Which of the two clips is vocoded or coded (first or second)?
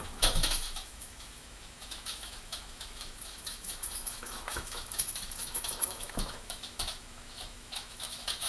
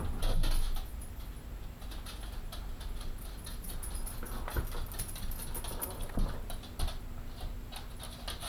first